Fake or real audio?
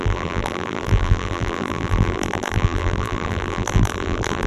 fake